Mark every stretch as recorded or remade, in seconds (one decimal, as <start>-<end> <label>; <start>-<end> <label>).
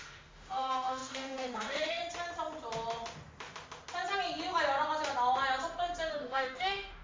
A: 0.0-2.0 remade; 2.0-6.1 recorded; 6.1-7.0 remade